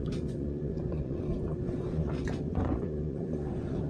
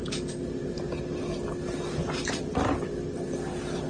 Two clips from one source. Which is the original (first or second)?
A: second